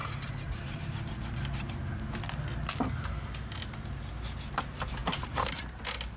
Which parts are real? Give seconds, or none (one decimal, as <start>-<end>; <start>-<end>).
0.8-5.0; 5.6-6.2